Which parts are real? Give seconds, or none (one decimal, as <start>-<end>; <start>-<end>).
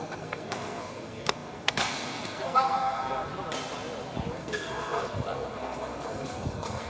3.3-4.3